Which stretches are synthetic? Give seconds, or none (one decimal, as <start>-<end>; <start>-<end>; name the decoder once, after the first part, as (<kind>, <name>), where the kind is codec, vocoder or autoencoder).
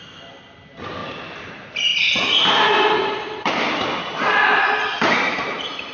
none